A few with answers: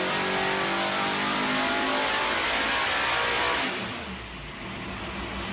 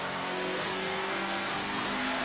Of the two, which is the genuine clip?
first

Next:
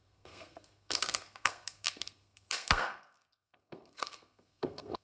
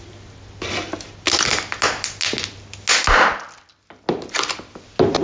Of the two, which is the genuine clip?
second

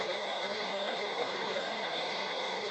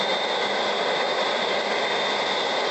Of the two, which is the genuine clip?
second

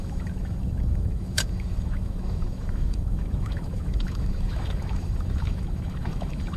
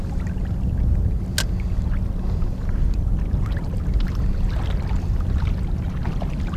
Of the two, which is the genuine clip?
second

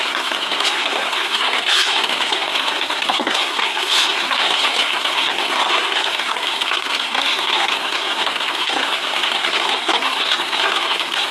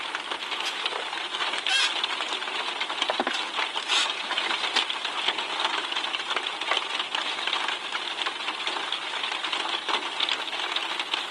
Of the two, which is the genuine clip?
second